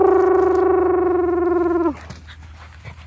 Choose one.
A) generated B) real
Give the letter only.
B